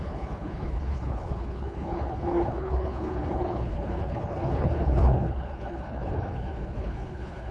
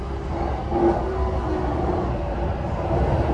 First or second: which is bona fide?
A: second